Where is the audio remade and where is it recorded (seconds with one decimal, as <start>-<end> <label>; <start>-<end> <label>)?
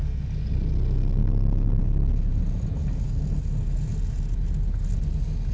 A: 0.0-5.5 recorded